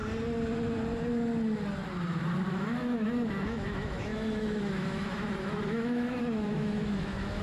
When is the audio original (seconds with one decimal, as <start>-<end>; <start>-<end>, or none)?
0.0-2.5